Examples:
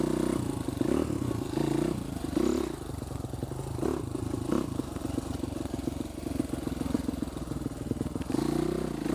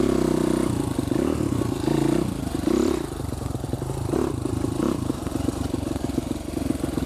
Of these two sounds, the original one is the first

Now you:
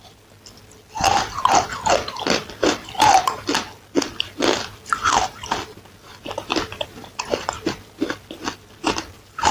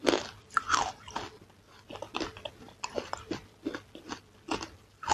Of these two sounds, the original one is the second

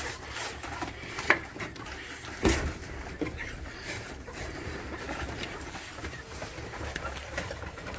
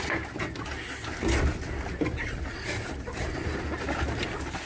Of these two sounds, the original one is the second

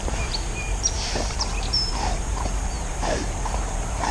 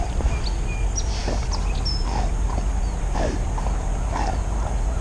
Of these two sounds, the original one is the second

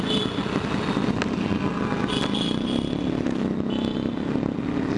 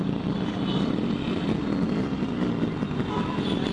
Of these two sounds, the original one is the first